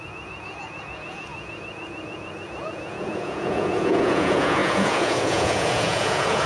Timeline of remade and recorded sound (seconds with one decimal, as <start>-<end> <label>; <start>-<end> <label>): 0.0-6.5 remade